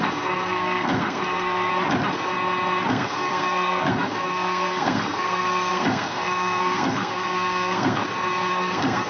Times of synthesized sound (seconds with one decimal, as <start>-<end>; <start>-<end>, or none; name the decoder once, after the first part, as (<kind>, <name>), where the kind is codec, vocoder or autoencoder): 0.0-1.7 (codec, SNAC); 2.9-8.0; 8.5-9.1